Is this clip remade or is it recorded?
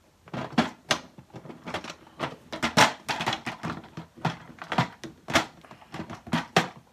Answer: recorded